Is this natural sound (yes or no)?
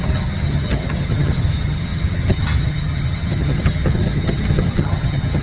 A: no